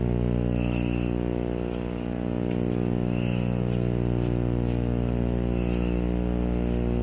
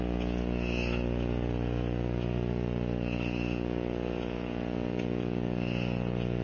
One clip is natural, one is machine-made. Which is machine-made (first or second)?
second